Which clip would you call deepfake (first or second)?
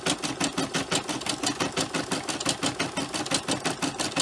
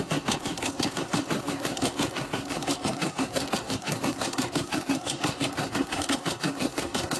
second